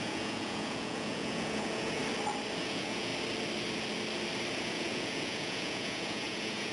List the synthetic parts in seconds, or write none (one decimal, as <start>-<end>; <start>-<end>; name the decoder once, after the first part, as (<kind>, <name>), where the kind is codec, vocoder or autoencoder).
0.0-2.0 (vocoder, Vocos); 2.6-3.1; 4.6-6.7